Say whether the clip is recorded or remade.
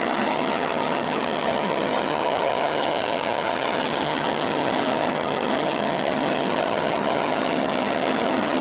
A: remade